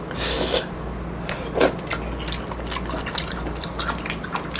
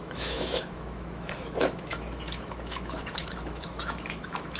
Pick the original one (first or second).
first